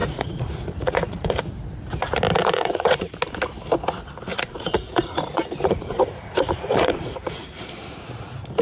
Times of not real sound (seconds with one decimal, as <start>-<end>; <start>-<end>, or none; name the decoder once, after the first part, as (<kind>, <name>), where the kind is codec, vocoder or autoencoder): 0.0-1.4 (vocoder, Vocos); 2.4-3.1; 4.3-7.6